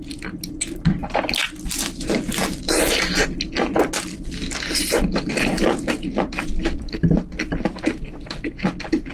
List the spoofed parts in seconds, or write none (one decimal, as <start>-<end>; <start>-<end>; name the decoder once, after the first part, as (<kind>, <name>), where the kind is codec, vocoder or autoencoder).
none